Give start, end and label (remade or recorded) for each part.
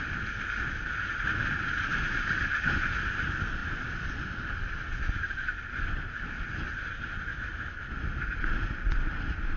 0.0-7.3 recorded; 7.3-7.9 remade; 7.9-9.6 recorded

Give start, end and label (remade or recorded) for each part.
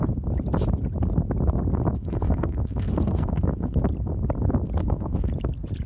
0.0-2.0 recorded; 2.0-3.8 remade; 3.8-4.8 recorded; 4.8-5.3 remade; 5.3-5.9 recorded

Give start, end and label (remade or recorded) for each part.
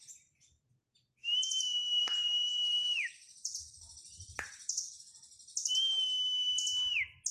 0.0-1.2 recorded; 1.2-5.0 remade; 5.0-7.3 recorded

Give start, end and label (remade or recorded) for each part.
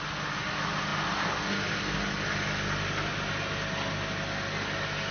0.0-5.1 recorded